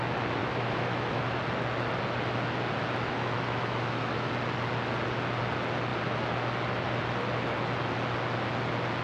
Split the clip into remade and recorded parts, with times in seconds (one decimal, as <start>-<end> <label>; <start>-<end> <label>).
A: 0.0-0.4 recorded; 0.4-1.4 remade; 1.4-3.1 recorded; 3.1-4.3 remade; 4.3-9.0 recorded